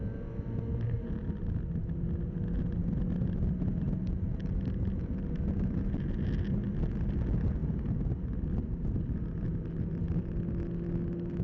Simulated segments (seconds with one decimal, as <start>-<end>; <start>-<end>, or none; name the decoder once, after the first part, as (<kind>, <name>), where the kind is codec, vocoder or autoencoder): none